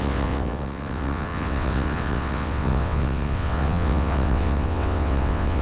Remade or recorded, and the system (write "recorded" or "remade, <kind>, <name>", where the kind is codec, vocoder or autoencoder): remade, vocoder, WaveNeXt